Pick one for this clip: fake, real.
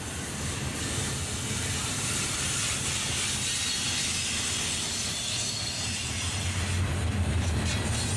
real